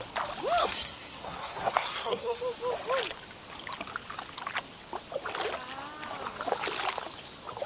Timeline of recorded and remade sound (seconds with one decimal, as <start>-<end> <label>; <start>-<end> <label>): 0.0-0.6 recorded; 0.6-2.4 remade; 2.4-7.7 recorded